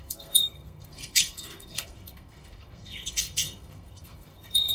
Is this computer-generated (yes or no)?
yes